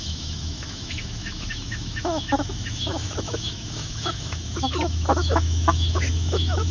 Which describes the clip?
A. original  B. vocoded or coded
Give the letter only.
B